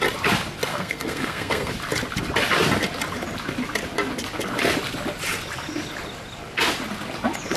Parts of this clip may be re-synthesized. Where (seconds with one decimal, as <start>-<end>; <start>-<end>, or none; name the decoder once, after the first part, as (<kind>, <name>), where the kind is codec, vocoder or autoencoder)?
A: 0.7-1.7 (codec, SNAC)